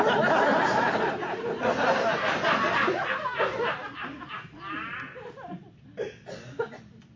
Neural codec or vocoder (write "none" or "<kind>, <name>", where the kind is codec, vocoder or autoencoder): none